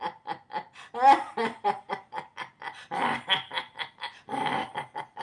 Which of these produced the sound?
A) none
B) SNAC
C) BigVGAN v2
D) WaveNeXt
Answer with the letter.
A